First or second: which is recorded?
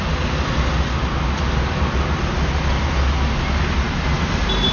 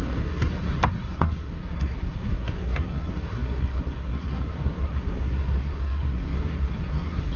first